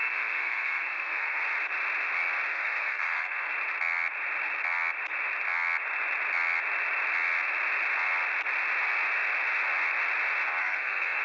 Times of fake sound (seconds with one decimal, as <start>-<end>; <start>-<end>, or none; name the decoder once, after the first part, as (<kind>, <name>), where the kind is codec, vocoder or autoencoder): 0.0-1.4 (codec, SNAC); 2.5-3.5; 10.6-11.2